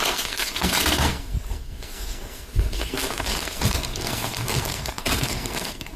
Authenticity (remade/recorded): remade